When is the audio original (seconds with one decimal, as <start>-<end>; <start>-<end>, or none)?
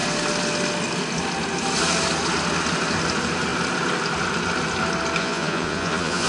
0.0-5.2